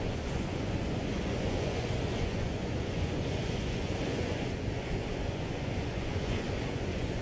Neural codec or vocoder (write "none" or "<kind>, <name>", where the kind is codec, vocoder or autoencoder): vocoder, Vocos